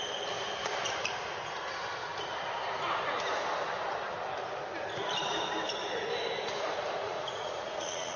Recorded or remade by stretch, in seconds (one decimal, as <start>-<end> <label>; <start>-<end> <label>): 0.0-7.0 recorded; 7.0-8.2 remade